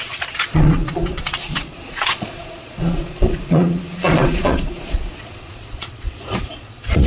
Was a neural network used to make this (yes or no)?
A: yes